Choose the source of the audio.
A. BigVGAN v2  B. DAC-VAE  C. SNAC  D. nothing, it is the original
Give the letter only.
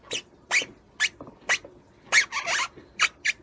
D